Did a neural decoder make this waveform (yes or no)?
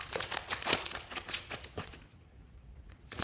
yes